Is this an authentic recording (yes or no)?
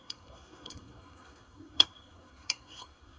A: no